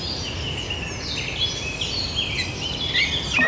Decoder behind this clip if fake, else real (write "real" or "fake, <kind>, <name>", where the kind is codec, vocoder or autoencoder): real